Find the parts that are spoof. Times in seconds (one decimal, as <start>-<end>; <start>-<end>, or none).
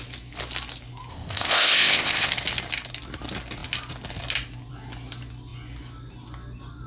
1.1-2.3